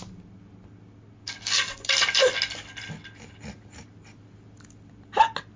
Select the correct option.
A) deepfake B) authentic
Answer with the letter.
B